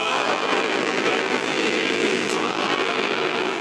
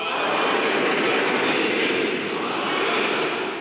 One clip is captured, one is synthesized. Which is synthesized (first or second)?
first